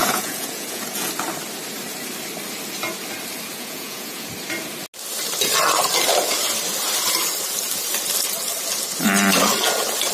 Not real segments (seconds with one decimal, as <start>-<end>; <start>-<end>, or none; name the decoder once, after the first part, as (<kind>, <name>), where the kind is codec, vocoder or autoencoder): 0.0-1.1 (vocoder, Vocos); 3.5-4.3